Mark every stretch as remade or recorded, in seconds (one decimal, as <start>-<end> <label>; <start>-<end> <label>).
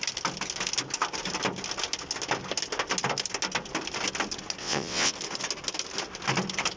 0.0-4.6 recorded; 4.6-5.1 remade; 5.1-6.8 recorded